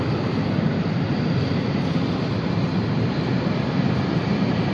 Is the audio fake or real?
real